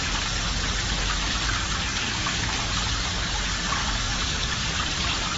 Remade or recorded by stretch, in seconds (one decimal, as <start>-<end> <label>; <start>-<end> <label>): 0.0-1.9 recorded; 1.9-2.7 remade; 2.7-3.8 recorded; 3.8-4.7 remade; 4.7-5.4 recorded